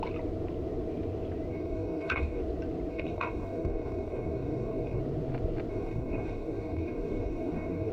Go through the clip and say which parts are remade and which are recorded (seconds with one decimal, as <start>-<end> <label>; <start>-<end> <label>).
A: 0.0-1.5 recorded; 1.5-2.4 remade; 2.4-2.9 recorded; 2.9-5.0 remade; 5.0-5.7 recorded; 5.7-7.9 remade